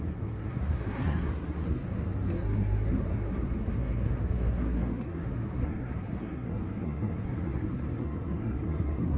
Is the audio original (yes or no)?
no